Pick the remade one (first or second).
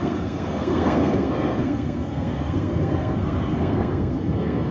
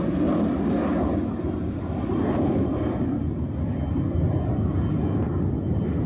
first